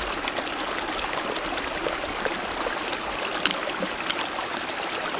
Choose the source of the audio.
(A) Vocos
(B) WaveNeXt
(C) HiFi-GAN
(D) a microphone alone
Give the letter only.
D